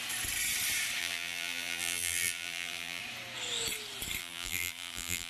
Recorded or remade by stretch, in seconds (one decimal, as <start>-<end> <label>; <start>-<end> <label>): 0.0-1.0 recorded; 1.0-3.0 remade; 3.0-4.2 recorded; 4.2-5.3 remade